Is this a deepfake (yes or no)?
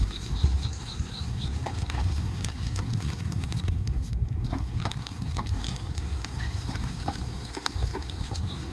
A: yes